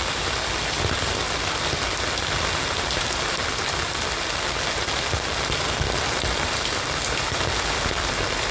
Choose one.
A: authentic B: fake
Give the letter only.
A